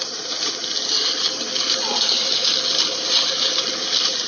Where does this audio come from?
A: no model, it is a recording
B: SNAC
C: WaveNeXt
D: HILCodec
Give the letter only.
A